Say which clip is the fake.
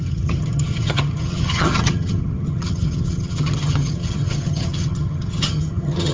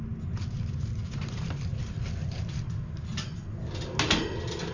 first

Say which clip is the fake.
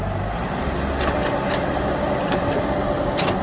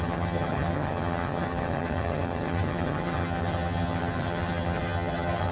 second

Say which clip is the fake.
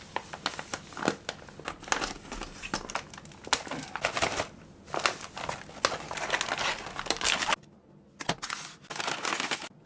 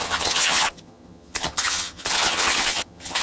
second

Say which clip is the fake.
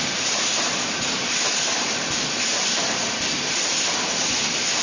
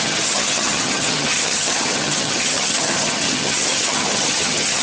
second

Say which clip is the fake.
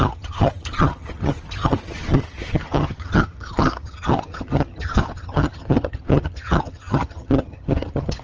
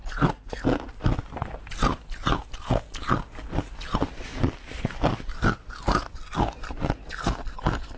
first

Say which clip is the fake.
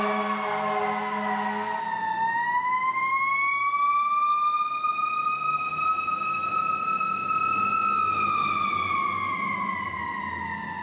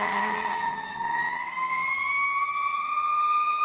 second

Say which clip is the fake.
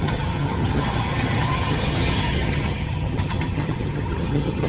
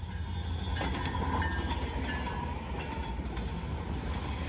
first